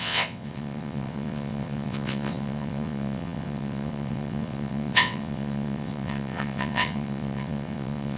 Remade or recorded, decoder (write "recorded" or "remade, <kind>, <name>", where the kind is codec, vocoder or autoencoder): remade, vocoder, WaveNeXt